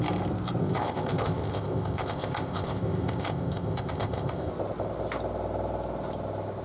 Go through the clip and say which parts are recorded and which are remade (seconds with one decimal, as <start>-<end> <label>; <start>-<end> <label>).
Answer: 0.0-0.6 recorded; 0.6-4.5 remade; 4.5-6.6 recorded

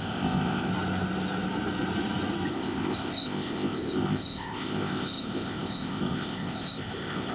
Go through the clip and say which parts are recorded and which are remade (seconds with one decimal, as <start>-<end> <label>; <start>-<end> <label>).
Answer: 0.0-0.7 remade; 0.7-2.5 recorded; 2.5-7.3 remade

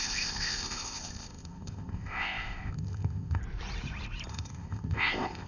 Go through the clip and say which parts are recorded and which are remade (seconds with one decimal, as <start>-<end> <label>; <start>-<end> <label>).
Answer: 0.0-3.4 remade; 3.4-4.3 recorded; 4.3-5.5 remade

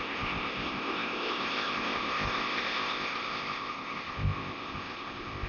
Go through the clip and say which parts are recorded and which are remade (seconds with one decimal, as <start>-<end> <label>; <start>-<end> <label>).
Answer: 0.0-5.5 remade